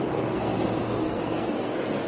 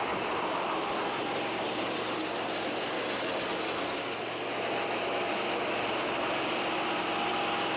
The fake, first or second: first